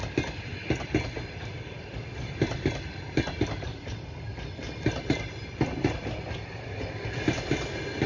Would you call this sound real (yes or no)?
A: yes